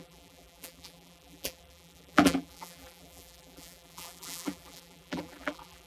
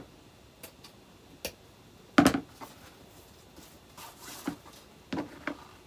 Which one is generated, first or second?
first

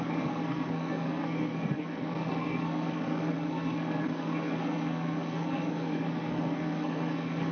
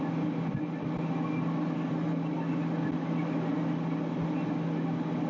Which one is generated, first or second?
first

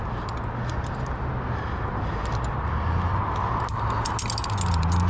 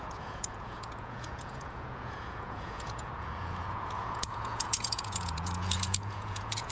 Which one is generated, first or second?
second